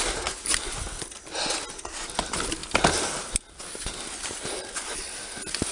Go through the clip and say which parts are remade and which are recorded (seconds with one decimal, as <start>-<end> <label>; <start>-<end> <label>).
0.0-5.7 recorded